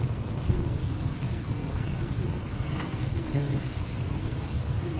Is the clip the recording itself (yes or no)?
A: no